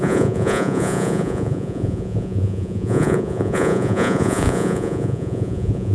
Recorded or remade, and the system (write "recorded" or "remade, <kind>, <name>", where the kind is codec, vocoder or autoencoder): remade, vocoder, Vocos